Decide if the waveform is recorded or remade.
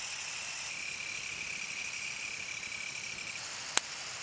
recorded